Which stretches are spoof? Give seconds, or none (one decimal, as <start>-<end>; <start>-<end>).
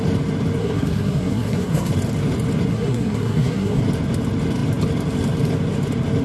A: 0.6-1.9; 2.7-3.8